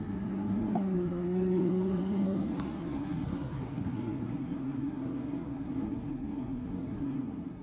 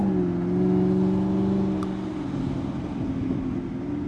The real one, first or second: second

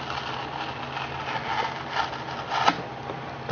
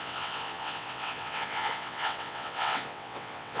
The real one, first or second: first